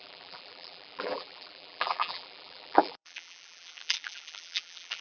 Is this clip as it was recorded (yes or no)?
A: no